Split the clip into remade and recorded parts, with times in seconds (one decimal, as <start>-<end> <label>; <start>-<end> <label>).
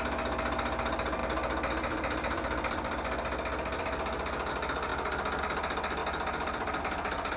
0.0-1.2 recorded; 1.2-4.5 remade; 4.5-6.0 recorded; 6.0-6.8 remade; 6.8-7.4 recorded